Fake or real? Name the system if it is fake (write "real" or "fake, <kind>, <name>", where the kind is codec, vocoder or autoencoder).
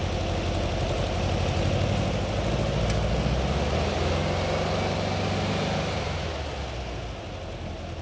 real